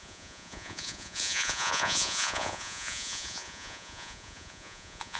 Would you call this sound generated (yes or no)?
yes